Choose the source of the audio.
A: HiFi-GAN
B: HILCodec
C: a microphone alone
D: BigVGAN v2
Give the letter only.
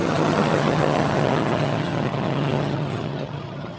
A